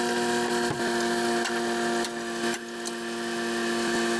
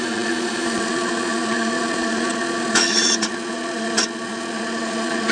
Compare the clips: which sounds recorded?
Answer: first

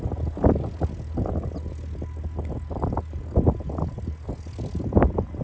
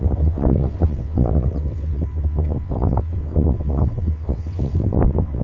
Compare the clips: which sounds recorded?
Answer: first